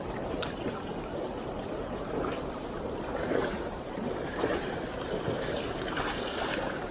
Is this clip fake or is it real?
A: fake